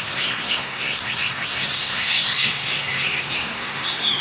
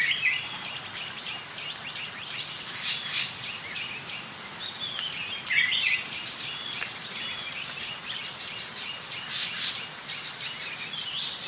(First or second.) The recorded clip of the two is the second